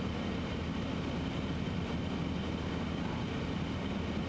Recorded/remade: recorded